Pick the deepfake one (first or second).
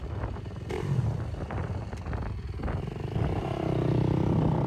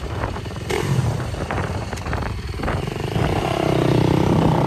second